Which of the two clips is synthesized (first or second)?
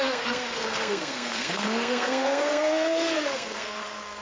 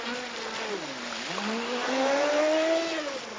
first